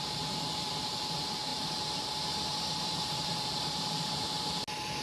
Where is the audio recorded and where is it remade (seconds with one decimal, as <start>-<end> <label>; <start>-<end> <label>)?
0.0-1.5 recorded; 1.5-4.3 remade; 4.3-5.0 recorded